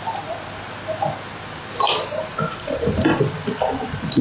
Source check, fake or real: real